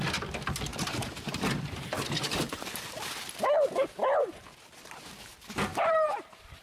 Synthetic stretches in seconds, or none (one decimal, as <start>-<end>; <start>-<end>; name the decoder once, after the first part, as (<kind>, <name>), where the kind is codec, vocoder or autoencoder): 0.7-3.1 (vocoder, BigVGAN v2); 5.7-6.6